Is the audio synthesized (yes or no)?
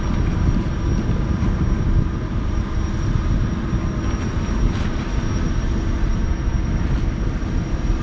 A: no